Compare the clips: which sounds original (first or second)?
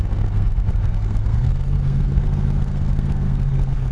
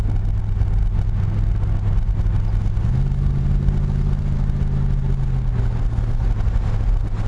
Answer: second